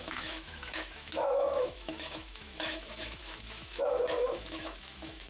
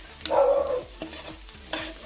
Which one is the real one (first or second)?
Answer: second